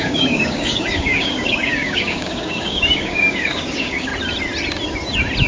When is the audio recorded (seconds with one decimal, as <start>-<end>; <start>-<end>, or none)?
4.1-5.5